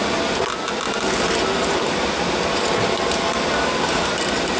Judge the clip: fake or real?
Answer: real